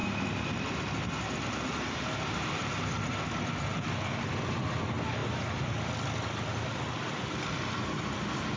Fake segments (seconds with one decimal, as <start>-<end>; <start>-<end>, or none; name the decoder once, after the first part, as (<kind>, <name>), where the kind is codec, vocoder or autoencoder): none